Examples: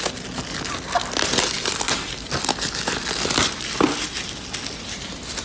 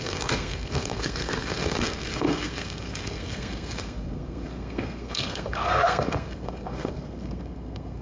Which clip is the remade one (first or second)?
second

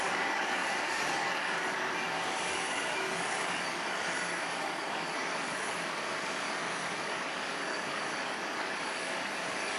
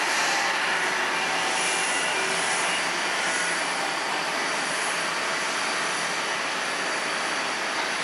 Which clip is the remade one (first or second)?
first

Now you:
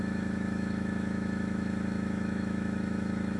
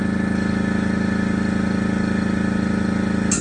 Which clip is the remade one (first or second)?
first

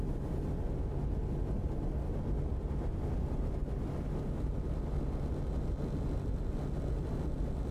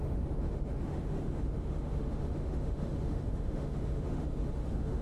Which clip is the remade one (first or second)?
second